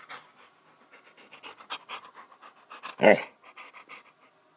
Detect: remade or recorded recorded